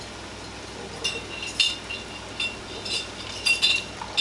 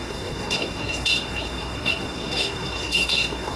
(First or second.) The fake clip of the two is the second